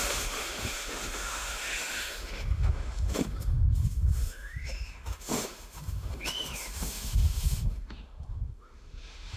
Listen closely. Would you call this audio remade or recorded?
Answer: remade